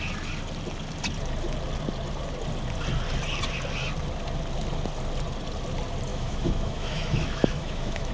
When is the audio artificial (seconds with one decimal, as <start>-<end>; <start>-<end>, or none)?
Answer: 6.1-8.1